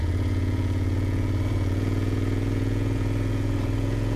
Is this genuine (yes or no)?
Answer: no